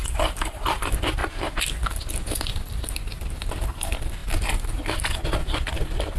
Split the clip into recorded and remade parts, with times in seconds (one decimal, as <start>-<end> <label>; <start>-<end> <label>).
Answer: 0.0-0.6 remade; 0.6-6.2 recorded